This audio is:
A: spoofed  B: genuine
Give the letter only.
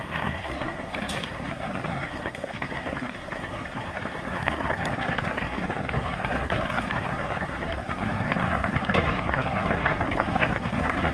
A